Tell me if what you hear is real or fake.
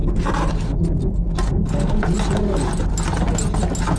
real